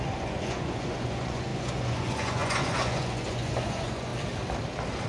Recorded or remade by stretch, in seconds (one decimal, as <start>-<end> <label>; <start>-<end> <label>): 0.0-4.1 remade; 4.1-5.1 recorded